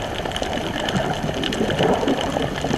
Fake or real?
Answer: real